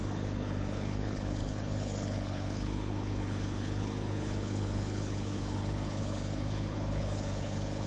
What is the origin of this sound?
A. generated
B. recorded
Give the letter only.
A